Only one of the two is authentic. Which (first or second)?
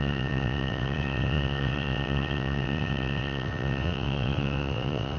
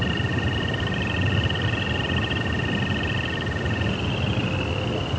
second